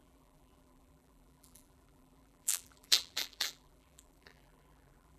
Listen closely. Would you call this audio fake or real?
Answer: fake